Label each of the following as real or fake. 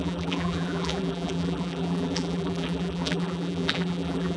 fake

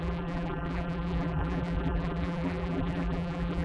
fake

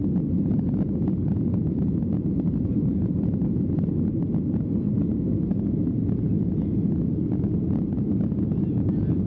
real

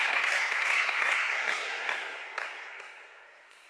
fake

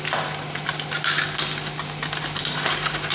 real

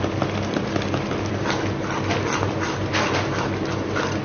real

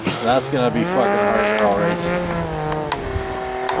real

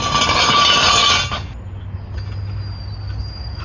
real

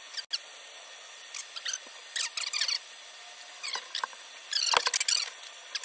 real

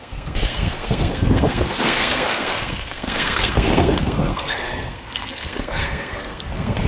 fake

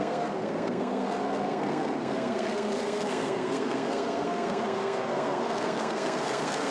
fake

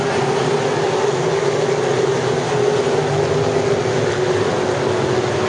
real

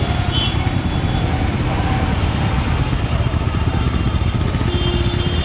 real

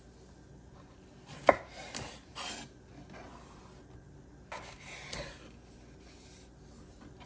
real